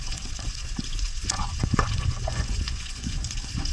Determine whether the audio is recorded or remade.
remade